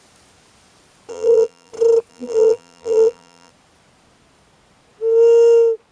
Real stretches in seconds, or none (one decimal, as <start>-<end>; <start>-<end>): 0.0-1.1; 1.7-2.1; 3.5-5.9